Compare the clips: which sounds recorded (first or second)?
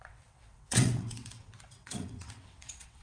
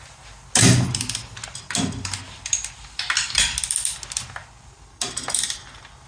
second